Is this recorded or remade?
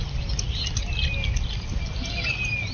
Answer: recorded